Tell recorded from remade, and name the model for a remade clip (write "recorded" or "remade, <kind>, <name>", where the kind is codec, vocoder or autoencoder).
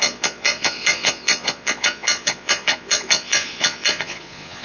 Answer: remade, vocoder, Vocos